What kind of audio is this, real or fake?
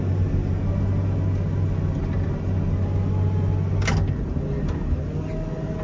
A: real